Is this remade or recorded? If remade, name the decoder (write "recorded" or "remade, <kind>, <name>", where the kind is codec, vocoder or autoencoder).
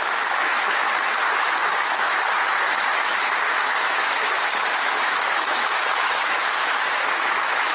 remade, autoencoder, DAC-VAE